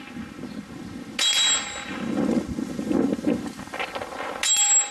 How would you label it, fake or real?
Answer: real